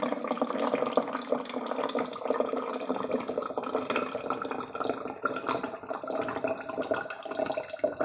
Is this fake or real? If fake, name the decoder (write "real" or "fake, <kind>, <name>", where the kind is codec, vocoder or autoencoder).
real